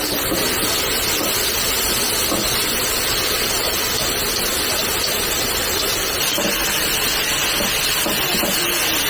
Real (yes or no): yes